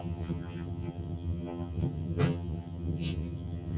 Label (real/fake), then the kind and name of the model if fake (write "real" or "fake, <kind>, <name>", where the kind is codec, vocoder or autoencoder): fake, vocoder, HiFi-GAN